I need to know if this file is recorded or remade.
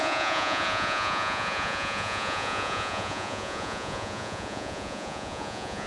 remade